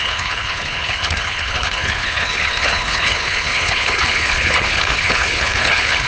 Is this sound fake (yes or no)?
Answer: yes